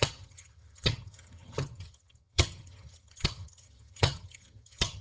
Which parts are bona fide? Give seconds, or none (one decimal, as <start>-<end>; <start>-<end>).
none